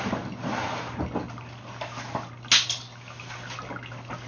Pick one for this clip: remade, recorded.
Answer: recorded